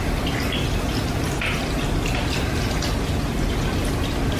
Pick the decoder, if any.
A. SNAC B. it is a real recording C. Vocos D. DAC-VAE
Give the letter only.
B